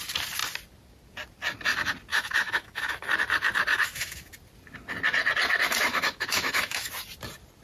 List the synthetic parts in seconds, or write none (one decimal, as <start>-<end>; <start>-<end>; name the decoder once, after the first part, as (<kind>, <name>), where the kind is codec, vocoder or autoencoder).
2.1-2.9 (autoencoder, DAC-VAE); 3.7-4.3; 5.9-6.9